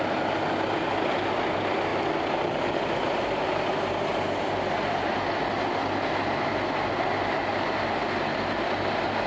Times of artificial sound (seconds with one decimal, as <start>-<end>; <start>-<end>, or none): none